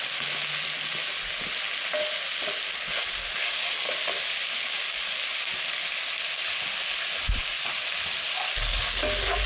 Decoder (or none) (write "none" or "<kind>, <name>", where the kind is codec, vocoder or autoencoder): none